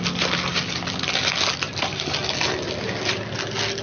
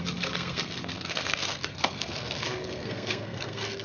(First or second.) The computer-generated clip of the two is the second